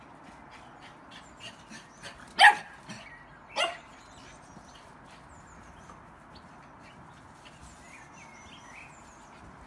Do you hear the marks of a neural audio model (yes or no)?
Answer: no